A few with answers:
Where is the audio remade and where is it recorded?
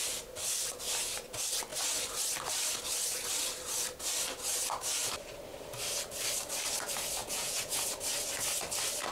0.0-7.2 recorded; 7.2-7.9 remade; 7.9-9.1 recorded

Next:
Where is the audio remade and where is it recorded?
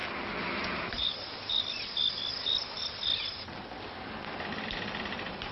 0.0-5.5 recorded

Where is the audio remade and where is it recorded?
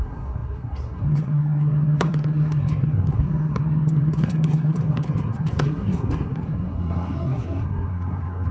0.0-8.5 remade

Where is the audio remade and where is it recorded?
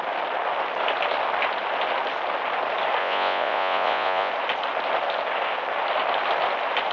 0.0-3.0 recorded; 3.0-4.3 remade; 4.3-6.9 recorded